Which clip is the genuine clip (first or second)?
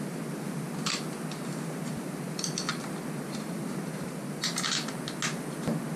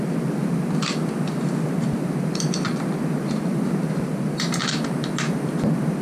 first